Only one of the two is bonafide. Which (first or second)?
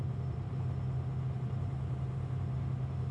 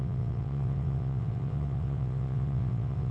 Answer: first